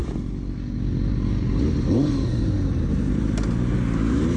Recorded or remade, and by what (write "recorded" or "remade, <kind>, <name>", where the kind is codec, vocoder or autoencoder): recorded